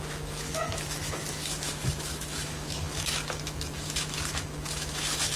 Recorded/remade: remade